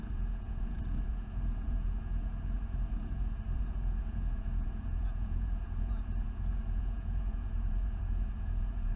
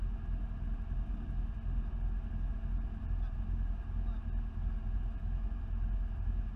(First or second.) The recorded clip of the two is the second